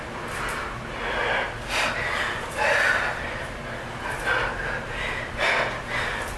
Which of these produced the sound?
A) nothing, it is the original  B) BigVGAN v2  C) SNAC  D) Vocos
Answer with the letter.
A